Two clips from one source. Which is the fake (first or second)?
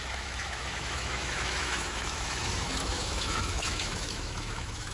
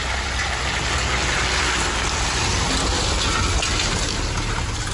first